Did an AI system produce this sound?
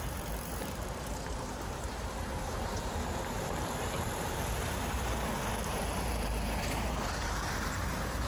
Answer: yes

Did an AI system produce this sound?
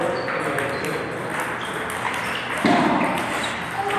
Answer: no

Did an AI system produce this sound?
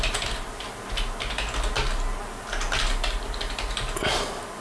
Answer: no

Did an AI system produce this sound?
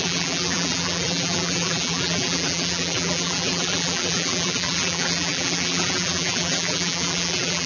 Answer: yes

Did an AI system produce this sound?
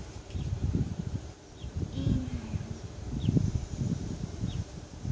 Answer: yes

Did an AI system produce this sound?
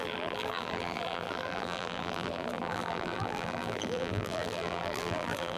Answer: yes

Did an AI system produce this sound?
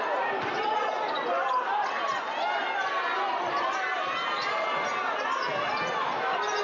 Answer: no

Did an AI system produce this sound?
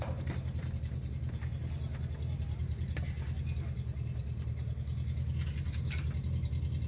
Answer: no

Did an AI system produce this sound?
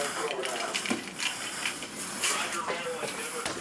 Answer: yes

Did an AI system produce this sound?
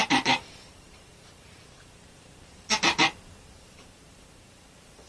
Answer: yes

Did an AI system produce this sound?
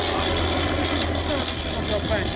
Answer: no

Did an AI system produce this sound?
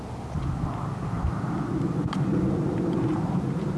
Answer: no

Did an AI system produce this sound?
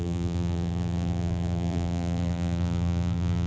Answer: yes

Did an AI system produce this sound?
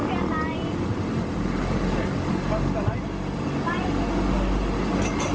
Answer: no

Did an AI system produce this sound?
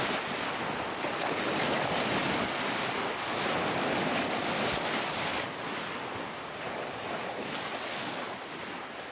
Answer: no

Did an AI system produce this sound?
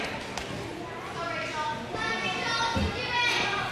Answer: yes